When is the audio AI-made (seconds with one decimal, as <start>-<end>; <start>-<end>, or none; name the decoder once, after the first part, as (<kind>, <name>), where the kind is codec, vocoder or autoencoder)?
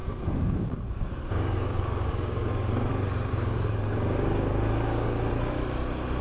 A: 0.0-2.9 (codec, DAC); 3.3-5.3